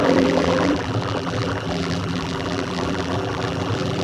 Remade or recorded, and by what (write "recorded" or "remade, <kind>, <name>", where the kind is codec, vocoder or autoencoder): remade, vocoder, BigVGAN v2